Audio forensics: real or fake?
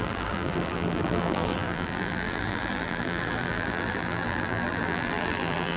fake